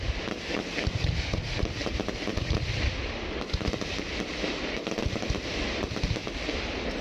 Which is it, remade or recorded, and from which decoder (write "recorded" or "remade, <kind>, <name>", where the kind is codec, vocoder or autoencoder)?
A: recorded